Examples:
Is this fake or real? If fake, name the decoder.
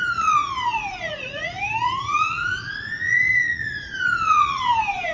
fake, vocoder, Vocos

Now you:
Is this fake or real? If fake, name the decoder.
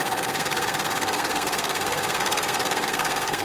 fake, codec, SNAC